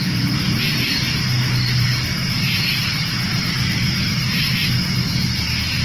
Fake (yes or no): no